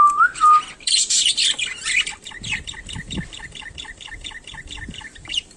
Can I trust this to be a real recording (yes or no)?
no